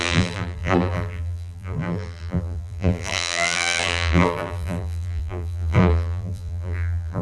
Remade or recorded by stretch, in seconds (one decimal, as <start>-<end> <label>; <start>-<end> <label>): 0.0-7.2 remade